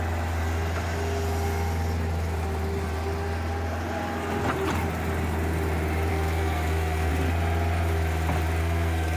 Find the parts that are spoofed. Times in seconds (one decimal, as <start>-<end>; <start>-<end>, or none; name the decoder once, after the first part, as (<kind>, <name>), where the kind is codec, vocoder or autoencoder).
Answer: 6.1-7.1 (codec, SNAC); 8.6-9.2